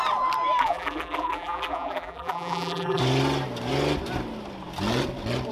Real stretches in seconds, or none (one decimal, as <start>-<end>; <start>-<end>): 0.0-0.6; 3.0-5.5